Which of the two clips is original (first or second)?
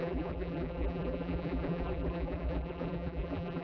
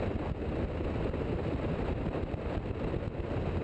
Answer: second